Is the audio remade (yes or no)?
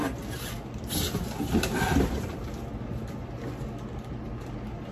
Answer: no